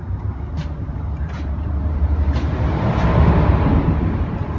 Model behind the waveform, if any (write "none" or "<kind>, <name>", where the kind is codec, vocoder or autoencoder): vocoder, BigVGAN v2